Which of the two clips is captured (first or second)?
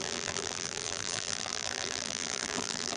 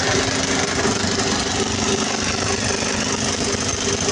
second